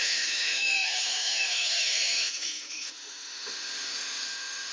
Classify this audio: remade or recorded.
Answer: remade